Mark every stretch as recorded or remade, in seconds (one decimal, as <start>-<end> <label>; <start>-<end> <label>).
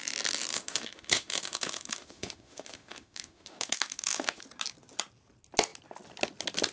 0.0-0.5 recorded; 0.5-4.4 remade; 4.4-6.7 recorded